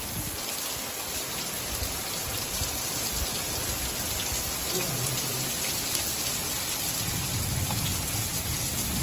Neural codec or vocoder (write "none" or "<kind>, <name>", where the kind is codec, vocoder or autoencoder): none